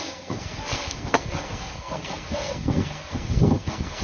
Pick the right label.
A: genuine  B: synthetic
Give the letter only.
B